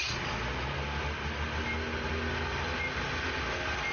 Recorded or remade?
recorded